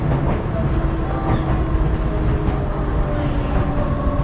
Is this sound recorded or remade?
recorded